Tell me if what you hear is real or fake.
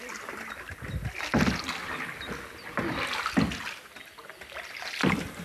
real